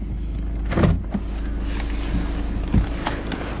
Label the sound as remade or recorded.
recorded